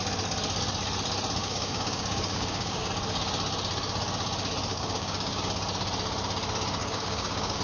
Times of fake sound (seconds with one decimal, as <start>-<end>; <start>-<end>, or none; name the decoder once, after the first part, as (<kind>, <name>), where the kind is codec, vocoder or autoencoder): 1.4-2.9 (codec, DAC); 4.7-5.4; 6.8-7.6